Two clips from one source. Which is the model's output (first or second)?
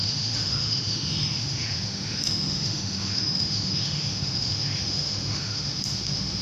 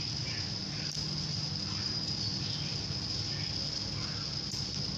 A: first